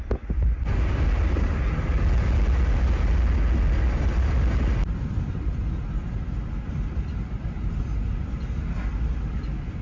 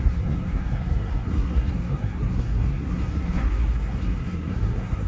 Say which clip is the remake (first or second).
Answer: second